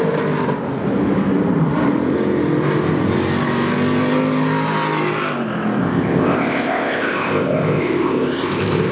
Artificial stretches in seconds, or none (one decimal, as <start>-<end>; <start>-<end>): 5.8-8.9

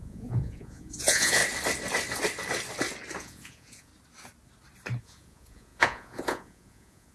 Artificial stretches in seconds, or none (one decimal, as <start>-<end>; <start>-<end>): 0.0-1.4; 3.2-3.9; 5.0-7.1

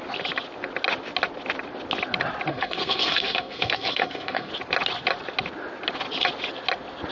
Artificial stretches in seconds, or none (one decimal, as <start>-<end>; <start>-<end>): 2.5-4.5

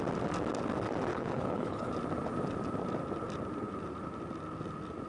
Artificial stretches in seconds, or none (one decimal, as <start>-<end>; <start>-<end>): 1.1-1.9

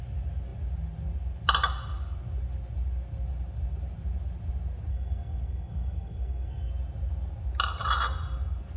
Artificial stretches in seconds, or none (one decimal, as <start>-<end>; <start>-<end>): 4.9-6.7

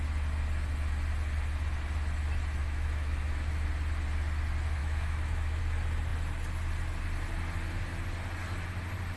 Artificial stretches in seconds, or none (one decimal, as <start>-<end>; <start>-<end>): 2.6-3.7; 4.8-5.6